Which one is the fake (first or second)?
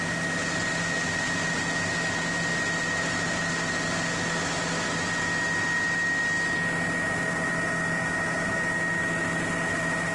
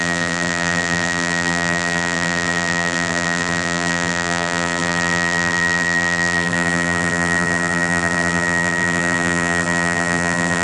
second